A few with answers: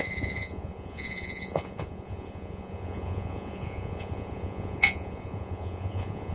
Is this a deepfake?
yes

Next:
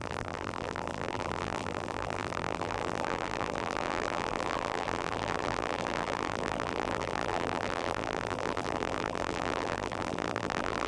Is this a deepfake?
yes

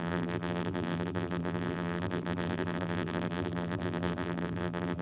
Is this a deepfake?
yes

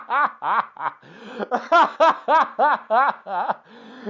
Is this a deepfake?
no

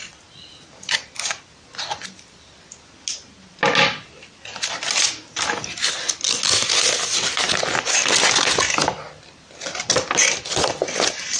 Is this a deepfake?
no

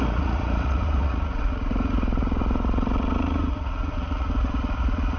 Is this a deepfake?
yes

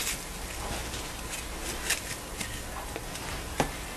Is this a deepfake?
no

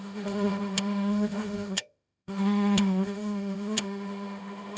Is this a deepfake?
yes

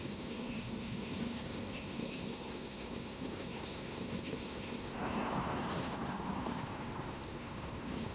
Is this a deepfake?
yes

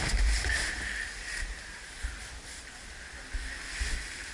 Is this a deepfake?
no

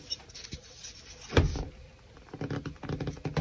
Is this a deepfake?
no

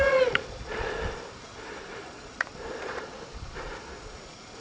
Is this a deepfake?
yes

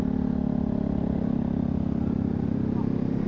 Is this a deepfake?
no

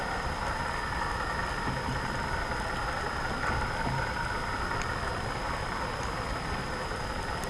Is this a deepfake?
no